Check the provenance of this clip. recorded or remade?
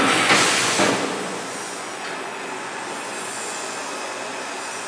remade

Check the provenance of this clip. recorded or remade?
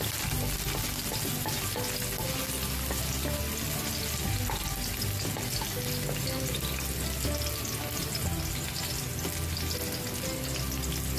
recorded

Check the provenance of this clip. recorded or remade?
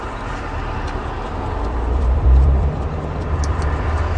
remade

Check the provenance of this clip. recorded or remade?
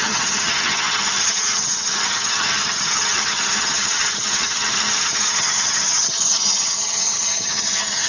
remade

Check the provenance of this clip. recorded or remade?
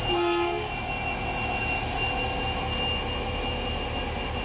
recorded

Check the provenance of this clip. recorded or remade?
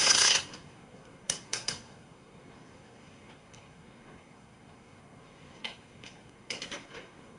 remade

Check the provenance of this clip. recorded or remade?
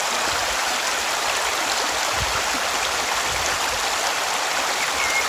recorded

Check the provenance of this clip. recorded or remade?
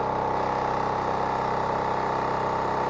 recorded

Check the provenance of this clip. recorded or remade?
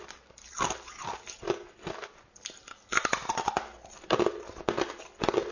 recorded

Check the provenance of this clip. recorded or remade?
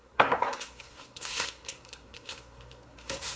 remade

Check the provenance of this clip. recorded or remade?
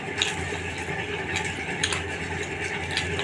recorded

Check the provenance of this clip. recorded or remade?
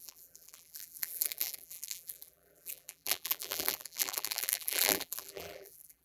remade